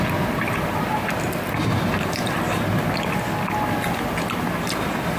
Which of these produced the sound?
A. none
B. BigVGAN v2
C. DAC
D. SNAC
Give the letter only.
A